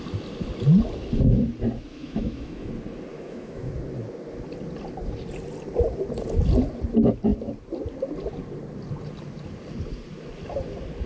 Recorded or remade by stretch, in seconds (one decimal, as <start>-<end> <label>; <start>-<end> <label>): 0.0-1.9 recorded; 1.9-2.7 remade; 2.7-3.1 recorded; 3.1-3.7 remade; 3.7-11.1 recorded